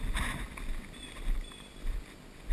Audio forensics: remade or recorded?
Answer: recorded